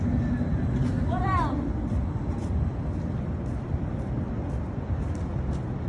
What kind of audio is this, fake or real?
real